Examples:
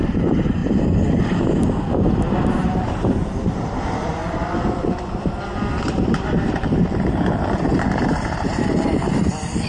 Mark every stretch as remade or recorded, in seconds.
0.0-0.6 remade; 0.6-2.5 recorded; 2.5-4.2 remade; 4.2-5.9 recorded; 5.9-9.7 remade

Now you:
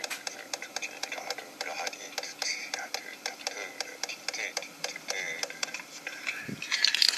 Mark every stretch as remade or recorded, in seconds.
0.0-7.2 recorded

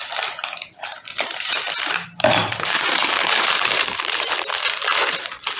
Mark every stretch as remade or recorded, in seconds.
0.0-0.9 recorded; 0.9-4.3 remade; 4.3-5.6 recorded

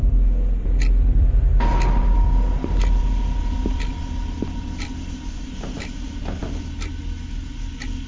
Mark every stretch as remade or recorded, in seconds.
0.0-8.1 recorded

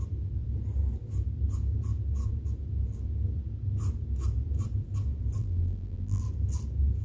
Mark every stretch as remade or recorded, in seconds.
0.0-5.4 recorded; 5.4-6.2 remade; 6.2-7.0 recorded